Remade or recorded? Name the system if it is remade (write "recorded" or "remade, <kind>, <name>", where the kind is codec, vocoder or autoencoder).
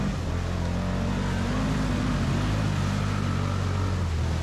recorded